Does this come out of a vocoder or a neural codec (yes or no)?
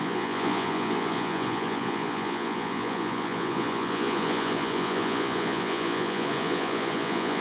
yes